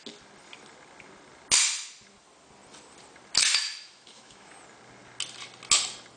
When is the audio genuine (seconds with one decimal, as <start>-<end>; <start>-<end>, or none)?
0.0-3.5; 4.5-6.2